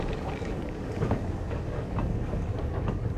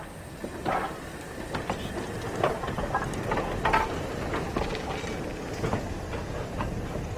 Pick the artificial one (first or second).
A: first